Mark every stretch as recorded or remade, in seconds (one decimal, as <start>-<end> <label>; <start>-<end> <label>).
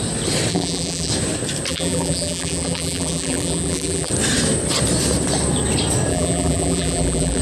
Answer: 0.0-0.5 recorded; 0.5-1.1 remade; 1.1-1.7 recorded; 1.7-4.1 remade; 4.1-6.1 recorded; 6.1-7.4 remade